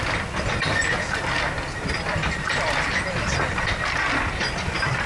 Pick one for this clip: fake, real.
real